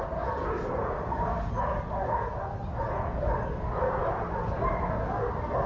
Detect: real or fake real